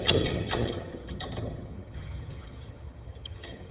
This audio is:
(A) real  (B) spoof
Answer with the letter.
B